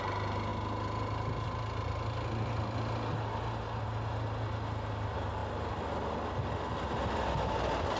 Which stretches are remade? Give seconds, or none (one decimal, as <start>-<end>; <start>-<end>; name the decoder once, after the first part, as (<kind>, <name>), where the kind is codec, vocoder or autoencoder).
none